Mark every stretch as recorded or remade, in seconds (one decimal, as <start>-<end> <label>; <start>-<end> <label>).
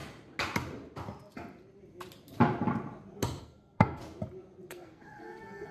0.0-3.4 recorded; 3.4-4.0 remade; 4.0-4.7 recorded; 4.7-5.7 remade